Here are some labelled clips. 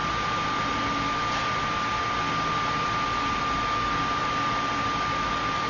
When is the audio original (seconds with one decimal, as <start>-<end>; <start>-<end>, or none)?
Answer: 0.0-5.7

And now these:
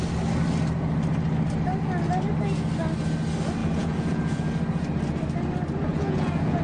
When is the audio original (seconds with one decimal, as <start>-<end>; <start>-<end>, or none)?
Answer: 0.0-3.6; 4.5-5.9

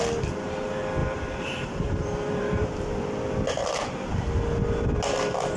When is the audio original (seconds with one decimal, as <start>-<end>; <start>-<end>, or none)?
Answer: 0.0-1.0; 2.9-5.6

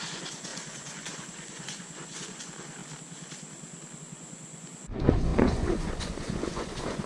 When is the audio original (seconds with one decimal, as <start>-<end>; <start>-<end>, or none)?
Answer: 2.8-4.0

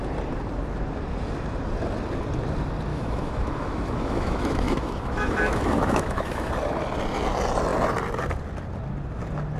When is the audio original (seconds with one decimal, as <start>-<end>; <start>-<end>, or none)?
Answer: 0.0-2.9; 6.5-9.6